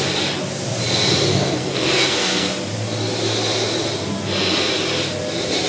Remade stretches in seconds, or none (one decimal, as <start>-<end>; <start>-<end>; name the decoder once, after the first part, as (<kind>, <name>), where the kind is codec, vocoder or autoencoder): 1.3-2.5 (codec, SNAC)